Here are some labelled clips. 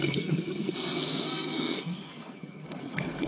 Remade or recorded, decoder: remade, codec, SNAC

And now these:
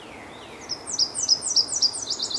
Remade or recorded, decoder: recorded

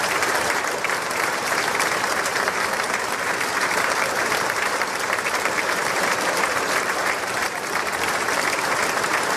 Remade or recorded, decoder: remade, vocoder, BigVGAN v2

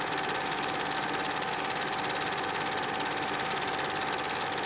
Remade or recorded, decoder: recorded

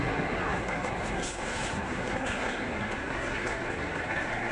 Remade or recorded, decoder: remade, codec, SNAC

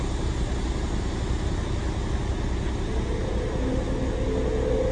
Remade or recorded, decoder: recorded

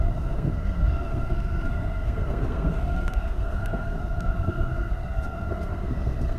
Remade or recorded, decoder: remade, codec, SNAC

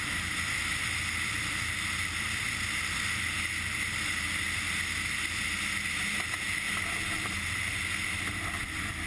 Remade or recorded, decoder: recorded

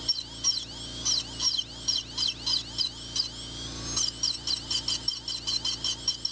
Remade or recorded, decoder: recorded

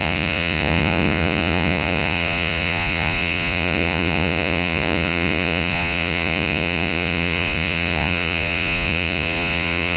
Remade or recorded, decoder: remade, vocoder, Vocos